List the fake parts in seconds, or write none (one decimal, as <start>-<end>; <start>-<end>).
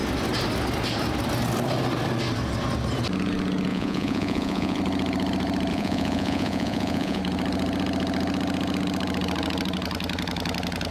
3.7-4.8; 5.7-7.2